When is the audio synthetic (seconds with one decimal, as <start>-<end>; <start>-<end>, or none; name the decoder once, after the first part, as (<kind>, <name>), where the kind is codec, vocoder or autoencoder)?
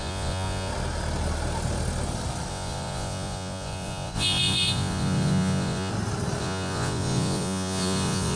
0.0-0.7 (vocoder, Vocos); 2.5-5.9; 6.4-8.4